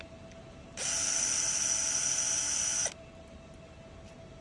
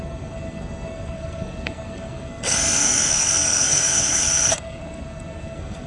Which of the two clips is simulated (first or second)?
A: second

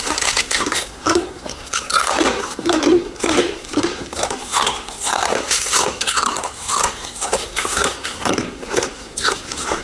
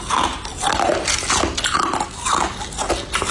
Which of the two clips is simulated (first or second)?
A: first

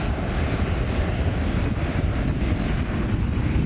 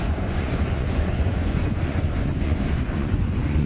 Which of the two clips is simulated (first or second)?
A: second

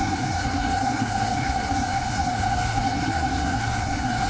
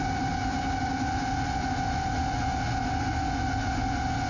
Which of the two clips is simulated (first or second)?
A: first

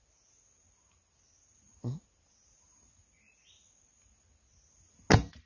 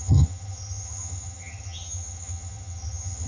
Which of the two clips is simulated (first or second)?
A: second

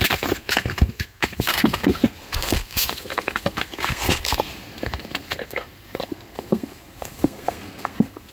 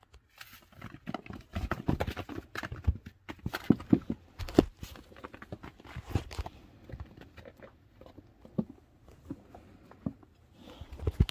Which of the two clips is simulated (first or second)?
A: first